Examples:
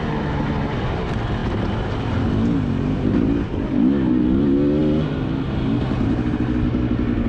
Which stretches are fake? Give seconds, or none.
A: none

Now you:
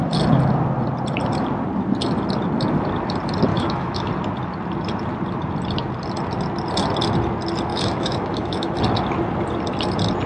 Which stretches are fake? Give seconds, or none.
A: 3.5-4.1; 7.7-8.8

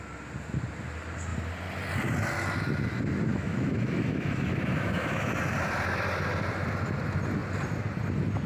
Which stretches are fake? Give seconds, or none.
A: 3.3-5.3